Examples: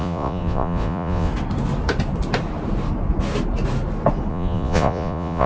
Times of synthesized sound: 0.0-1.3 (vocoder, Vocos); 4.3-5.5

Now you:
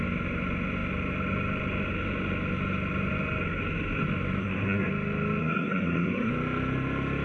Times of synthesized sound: 4.4-4.9 (codec, SNAC); 5.4-6.3

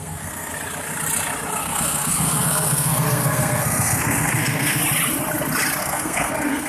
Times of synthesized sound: 0.0-0.5 (codec, SNAC); 1.6-4.8; 5.8-6.7

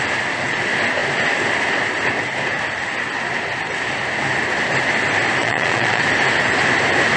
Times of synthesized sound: 5.4-6.0 (vocoder, Vocos)

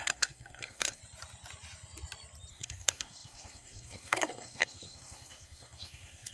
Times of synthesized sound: 0.0-1.0 (codec, SNAC); 2.5-6.3